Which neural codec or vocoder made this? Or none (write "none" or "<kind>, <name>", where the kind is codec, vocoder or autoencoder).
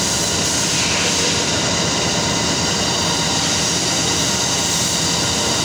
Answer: none